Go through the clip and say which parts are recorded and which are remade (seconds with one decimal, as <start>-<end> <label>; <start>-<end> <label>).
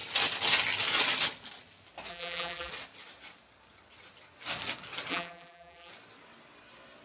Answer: 0.0-2.1 recorded; 2.1-2.7 remade; 2.7-5.1 recorded; 5.1-5.9 remade; 5.9-7.0 recorded